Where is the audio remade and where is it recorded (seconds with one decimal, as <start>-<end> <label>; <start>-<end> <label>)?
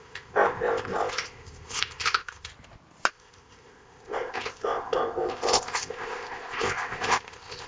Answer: 0.0-2.5 remade; 2.5-3.1 recorded; 3.1-7.7 remade